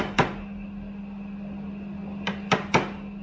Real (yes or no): yes